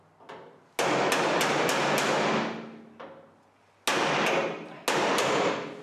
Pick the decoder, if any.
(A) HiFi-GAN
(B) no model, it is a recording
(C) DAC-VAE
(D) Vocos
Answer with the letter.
B